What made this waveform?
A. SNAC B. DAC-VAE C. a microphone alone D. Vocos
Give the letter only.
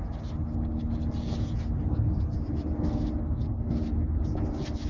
C